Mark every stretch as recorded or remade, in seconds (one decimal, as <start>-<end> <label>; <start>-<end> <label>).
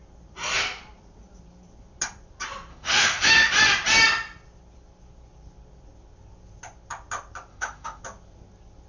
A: 0.0-2.7 recorded; 2.7-3.5 remade; 3.5-7.5 recorded; 7.5-8.0 remade; 8.0-8.9 recorded